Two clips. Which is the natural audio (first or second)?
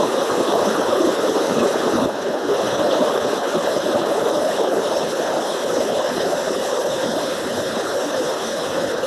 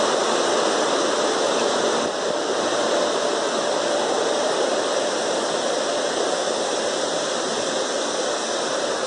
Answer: second